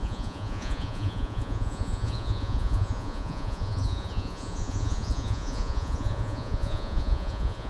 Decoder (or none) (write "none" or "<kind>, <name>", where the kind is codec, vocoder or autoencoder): vocoder, Vocos